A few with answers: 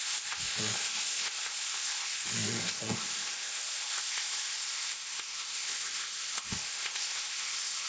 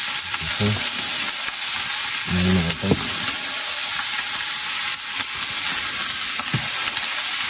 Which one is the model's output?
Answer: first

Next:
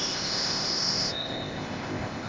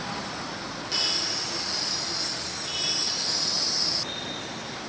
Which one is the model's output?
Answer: first